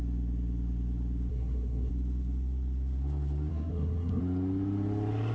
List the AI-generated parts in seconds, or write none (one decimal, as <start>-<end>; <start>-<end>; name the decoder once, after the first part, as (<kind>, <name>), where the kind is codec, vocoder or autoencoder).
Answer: 1.3-1.9 (codec, SNAC); 3.5-4.2